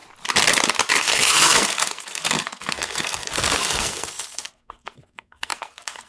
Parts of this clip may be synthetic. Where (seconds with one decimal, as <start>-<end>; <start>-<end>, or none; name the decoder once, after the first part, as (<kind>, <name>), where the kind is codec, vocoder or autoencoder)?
0.9-6.1 (codec, SNAC)